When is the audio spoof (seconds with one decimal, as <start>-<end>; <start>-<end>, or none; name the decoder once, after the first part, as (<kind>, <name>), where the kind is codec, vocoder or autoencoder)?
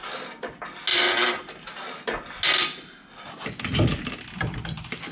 none